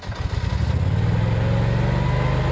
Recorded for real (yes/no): yes